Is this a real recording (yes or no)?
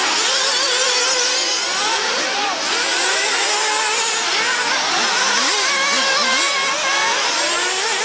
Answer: yes